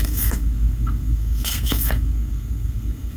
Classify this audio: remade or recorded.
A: remade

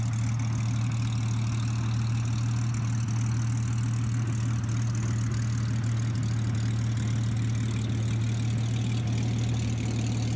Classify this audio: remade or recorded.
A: recorded